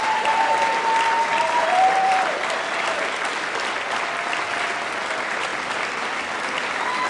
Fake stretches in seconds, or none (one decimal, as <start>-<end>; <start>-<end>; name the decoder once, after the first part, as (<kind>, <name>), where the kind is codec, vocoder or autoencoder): 0.0-2.4 (vocoder, BigVGAN v2); 5.0-5.5

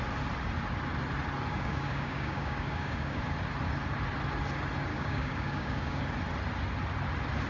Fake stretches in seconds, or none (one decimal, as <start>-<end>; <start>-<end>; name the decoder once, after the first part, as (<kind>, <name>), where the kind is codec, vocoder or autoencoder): 1.5-3.2 (codec, DAC); 4.9-6.0

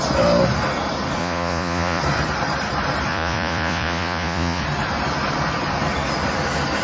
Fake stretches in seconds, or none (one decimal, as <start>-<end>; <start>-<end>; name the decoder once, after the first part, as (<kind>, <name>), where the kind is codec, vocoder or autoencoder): 1.2-2.0 (vocoder, Vocos); 3.1-4.6